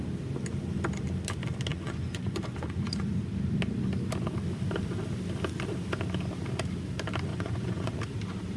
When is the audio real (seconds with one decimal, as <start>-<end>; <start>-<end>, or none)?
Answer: 0.0-1.7; 3.1-7.3; 8.0-8.6